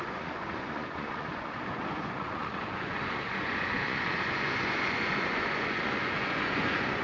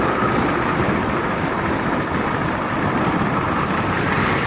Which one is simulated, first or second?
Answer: first